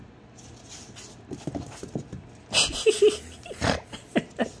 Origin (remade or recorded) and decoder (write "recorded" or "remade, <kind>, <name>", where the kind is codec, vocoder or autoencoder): recorded